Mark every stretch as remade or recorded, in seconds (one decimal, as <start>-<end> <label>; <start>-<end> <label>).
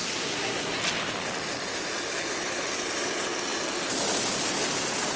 0.0-0.8 remade; 0.8-5.2 recorded